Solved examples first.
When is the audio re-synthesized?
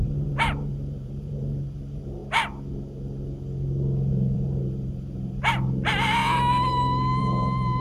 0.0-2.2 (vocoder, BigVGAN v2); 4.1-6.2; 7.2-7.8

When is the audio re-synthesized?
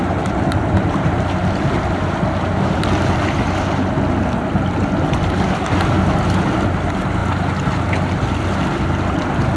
none